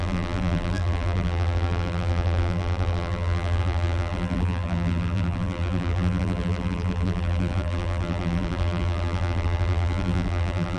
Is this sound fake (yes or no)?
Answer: yes